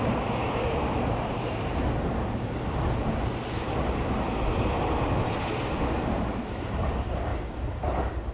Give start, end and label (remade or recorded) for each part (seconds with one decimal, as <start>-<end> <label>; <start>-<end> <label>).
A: 0.0-1.7 remade; 1.7-6.4 recorded; 6.4-7.3 remade; 7.3-8.3 recorded